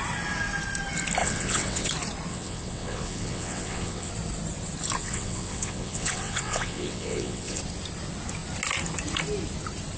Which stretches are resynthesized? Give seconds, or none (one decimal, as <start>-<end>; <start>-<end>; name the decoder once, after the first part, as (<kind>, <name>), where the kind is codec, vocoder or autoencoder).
1.2-1.9 (vocoder, WaveNeXt); 2.3-4.1; 5.0-7.6